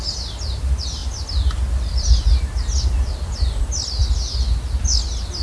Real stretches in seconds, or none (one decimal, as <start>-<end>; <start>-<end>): 0.0-5.4